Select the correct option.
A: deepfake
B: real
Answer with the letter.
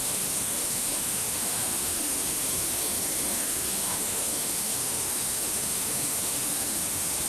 A